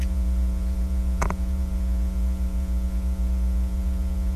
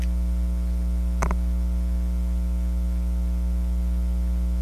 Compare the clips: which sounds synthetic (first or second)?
first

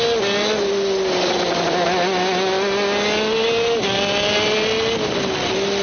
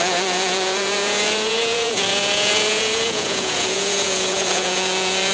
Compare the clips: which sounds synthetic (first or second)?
second